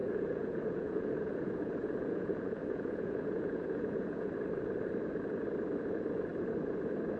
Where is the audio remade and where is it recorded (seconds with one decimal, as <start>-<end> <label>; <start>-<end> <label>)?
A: 0.0-4.3 remade; 4.3-7.2 recorded